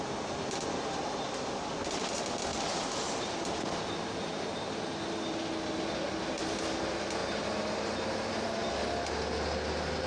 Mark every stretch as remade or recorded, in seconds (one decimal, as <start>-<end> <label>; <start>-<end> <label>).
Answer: 0.0-10.1 recorded